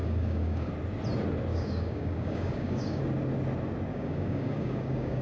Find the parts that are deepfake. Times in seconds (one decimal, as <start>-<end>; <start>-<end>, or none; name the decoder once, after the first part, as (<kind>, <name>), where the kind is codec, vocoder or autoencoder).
0.0-0.7 (codec, DAC); 1.5-3.0; 3.9-5.2